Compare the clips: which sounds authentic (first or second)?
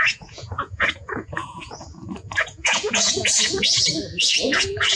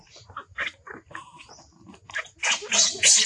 second